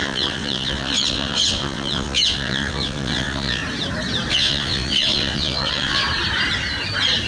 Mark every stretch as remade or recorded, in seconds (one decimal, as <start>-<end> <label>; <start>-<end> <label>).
0.0-3.6 remade; 3.6-4.3 recorded; 4.3-6.0 remade; 6.0-7.3 recorded